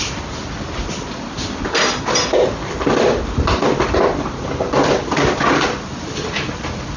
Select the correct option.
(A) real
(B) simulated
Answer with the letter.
A